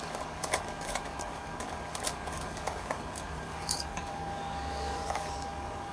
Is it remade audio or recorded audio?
remade